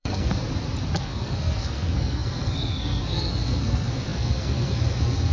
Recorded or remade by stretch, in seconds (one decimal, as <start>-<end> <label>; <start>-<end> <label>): 0.0-0.4 remade; 0.4-1.0 recorded; 1.0-5.3 remade